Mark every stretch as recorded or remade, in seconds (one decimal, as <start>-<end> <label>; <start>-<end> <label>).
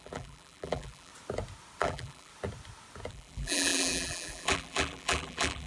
0.0-1.1 remade; 1.1-1.8 recorded; 1.8-2.3 remade; 2.3-3.1 recorded; 3.1-5.7 remade